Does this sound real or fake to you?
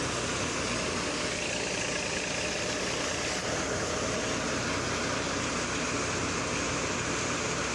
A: real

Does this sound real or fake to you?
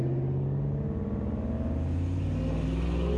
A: real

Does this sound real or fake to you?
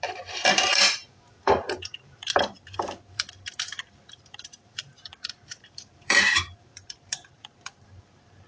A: fake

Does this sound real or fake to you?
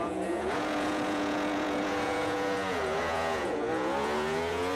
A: fake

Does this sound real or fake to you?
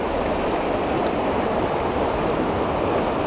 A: real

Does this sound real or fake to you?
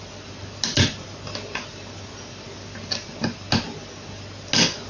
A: real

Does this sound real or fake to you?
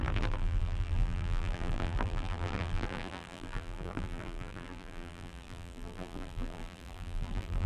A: fake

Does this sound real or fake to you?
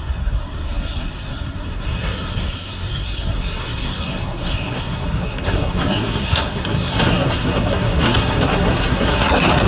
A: fake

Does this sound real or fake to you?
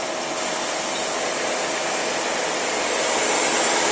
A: real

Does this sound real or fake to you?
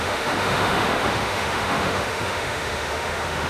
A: fake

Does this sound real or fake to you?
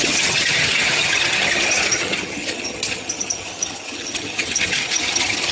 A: fake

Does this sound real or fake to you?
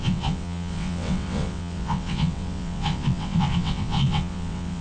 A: fake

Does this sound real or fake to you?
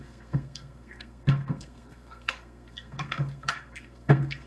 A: fake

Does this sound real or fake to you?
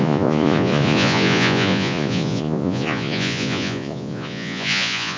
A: fake